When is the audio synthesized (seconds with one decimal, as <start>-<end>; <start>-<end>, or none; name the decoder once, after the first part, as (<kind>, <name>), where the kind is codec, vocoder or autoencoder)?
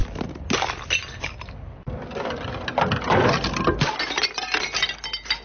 none